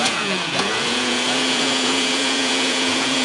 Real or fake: fake